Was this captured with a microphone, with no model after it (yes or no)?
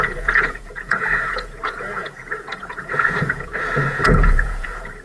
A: no